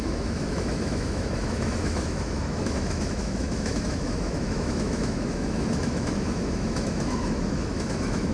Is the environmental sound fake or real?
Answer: fake